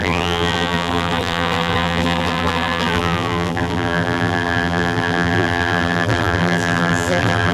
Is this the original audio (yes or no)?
no